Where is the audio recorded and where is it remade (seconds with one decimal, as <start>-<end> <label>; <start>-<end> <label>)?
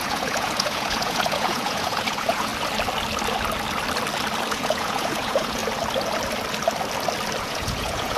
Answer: 0.0-2.5 remade; 2.5-4.5 recorded; 4.5-5.6 remade; 5.6-7.4 recorded; 7.4-8.2 remade